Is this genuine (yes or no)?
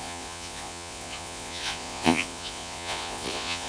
no